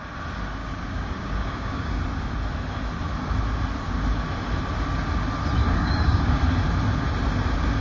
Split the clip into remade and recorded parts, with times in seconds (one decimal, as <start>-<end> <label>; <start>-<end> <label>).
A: 0.0-0.6 recorded; 0.6-2.0 remade; 2.0-5.6 recorded; 5.6-6.4 remade; 6.4-7.8 recorded